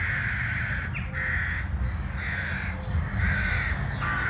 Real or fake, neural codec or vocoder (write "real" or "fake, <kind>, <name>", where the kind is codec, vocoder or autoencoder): real